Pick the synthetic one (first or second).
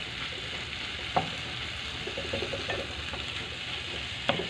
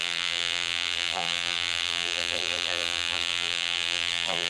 second